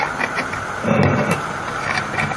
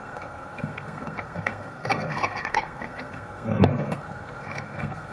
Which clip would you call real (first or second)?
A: first